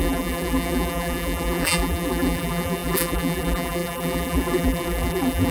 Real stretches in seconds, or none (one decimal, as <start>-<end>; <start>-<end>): none